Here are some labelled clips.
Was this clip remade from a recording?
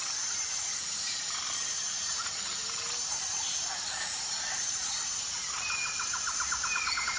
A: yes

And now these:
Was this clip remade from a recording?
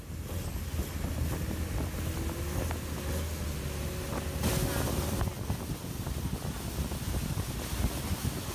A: no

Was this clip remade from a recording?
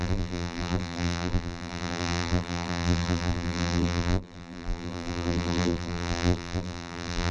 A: yes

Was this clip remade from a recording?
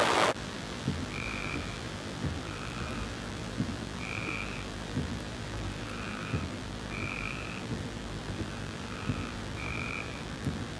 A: yes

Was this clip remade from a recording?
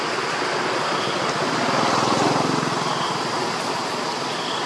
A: no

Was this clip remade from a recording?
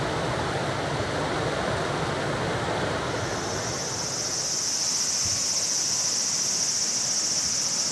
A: no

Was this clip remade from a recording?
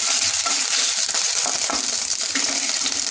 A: yes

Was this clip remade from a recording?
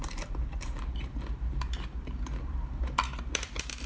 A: yes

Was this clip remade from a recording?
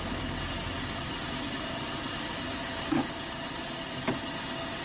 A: no